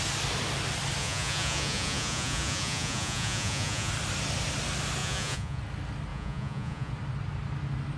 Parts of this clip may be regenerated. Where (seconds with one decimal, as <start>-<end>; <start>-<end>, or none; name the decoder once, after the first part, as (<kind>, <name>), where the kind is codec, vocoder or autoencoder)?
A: 1.0-3.9 (vocoder, Vocos); 5.0-5.6; 6.1-6.9